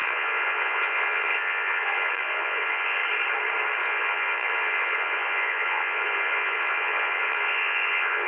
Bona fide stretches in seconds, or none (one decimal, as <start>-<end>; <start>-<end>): 3.0-3.8